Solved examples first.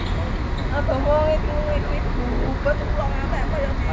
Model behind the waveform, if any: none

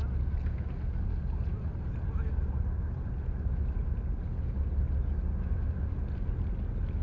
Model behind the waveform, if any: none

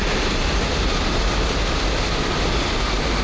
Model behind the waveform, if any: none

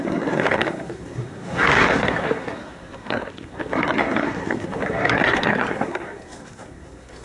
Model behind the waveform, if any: codec, SNAC